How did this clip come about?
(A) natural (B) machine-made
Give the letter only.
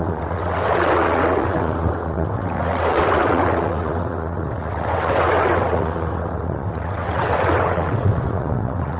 B